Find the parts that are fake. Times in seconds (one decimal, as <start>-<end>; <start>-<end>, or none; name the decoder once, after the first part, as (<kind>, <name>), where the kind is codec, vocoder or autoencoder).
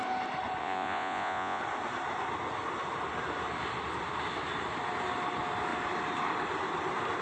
0.6-1.6 (vocoder, Vocos)